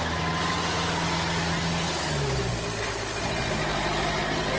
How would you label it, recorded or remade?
recorded